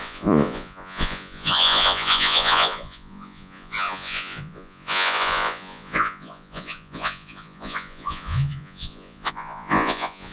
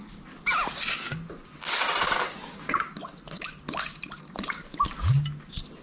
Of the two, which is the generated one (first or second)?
first